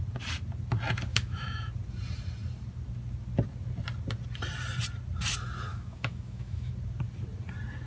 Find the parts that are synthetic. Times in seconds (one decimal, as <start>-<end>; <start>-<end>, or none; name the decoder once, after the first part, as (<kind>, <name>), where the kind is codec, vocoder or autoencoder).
1.1-1.7 (autoencoder, DAC-VAE); 5.7-6.7